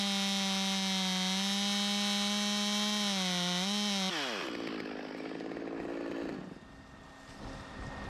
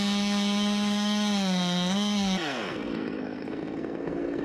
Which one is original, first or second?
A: first